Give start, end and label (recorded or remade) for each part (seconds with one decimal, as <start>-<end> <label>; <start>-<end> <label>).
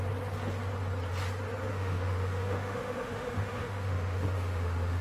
0.0-1.7 recorded; 1.7-5.0 remade